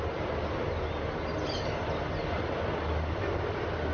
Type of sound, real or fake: real